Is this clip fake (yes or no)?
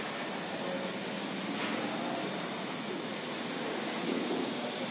no